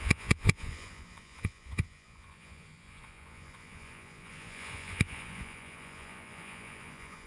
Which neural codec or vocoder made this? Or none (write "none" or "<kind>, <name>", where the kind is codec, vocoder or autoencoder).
vocoder, Vocos